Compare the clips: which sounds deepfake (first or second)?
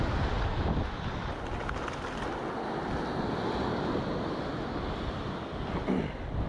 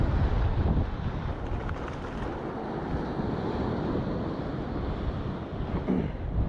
second